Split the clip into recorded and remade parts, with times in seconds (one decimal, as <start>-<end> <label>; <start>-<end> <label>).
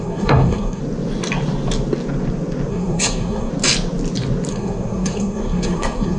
0.0-0.8 remade; 0.8-2.7 recorded; 2.7-3.5 remade; 3.5-4.5 recorded; 4.5-6.2 remade